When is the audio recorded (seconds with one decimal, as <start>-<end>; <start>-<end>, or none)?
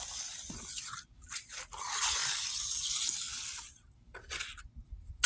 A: 0.0-5.3